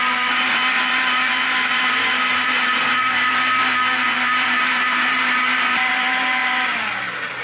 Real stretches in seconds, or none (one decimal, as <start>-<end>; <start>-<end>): none

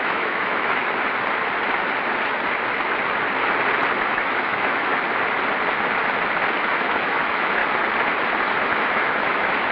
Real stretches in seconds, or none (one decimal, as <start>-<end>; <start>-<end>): 0.8-4.1; 4.9-6.7; 7.6-8.7

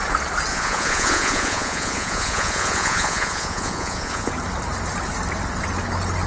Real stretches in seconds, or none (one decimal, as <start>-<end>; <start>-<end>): 0.0-0.5; 4.3-6.3

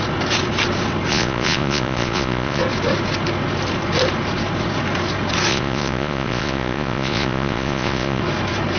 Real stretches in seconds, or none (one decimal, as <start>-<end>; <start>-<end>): 0.0-1.1; 2.6-5.5; 8.2-8.8

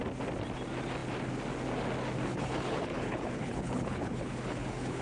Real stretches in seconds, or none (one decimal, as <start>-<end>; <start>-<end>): 0.0-2.3